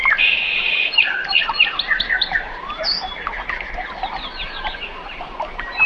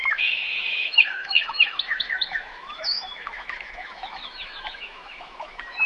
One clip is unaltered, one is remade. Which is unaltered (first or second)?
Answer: first